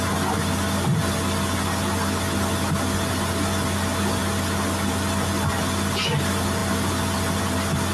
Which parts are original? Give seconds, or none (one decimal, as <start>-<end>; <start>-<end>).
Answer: 0.0-7.9